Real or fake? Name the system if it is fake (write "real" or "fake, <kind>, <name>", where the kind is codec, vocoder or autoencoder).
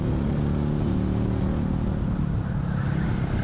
real